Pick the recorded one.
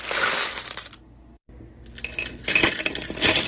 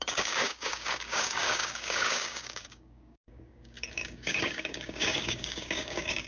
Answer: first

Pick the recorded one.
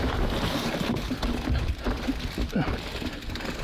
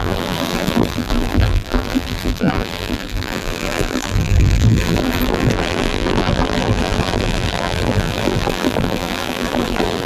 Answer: first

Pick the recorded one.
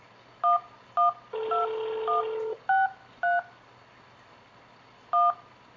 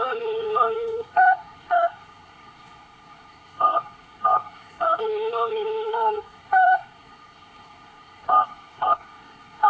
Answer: first